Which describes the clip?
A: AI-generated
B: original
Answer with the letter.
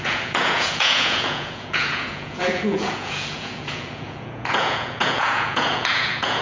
A